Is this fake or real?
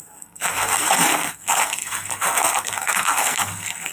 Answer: fake